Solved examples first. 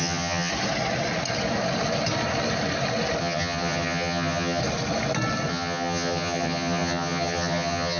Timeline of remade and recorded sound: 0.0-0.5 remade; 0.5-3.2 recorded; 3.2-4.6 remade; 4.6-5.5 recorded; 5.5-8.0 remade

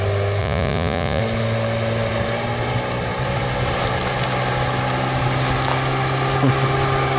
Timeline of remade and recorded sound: 0.0-0.4 recorded; 0.4-1.2 remade; 1.2-7.2 recorded

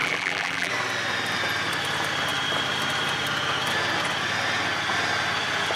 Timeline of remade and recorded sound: 0.0-0.7 remade; 0.7-5.8 recorded

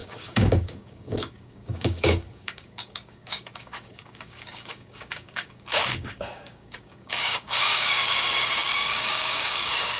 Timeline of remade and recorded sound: 0.0-10.0 remade

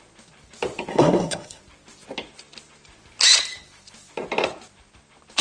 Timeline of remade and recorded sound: 0.0-0.9 recorded; 0.9-1.6 remade; 1.6-5.4 recorded

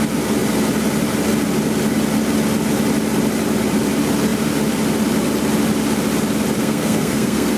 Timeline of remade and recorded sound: 0.0-6.6 recorded; 6.6-7.6 remade

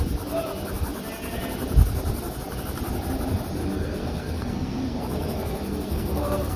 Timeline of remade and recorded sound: 0.0-3.6 recorded; 3.6-6.6 remade

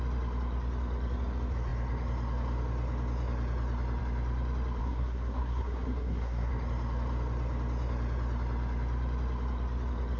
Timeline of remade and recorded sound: 0.0-4.8 recorded; 4.8-6.5 remade; 6.5-10.2 recorded